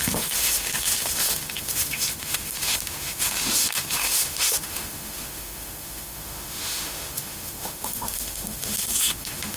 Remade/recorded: remade